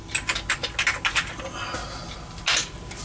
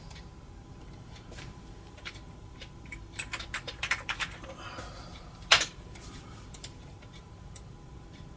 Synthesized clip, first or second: second